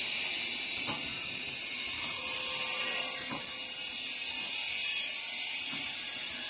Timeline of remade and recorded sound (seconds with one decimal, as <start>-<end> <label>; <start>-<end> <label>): 0.0-6.5 recorded